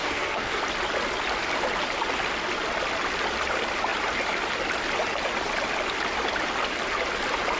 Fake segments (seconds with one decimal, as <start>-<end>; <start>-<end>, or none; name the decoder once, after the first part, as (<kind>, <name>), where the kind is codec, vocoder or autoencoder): 0.0-0.6 (codec, SNAC)